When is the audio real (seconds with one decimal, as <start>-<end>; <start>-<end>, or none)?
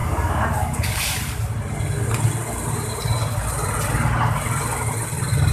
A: 1.0-5.5